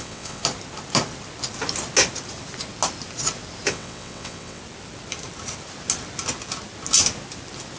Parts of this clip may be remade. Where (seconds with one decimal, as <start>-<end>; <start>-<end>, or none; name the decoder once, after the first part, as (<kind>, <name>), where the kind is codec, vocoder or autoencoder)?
0.0-0.4 (vocoder, WaveNeXt); 3.7-4.6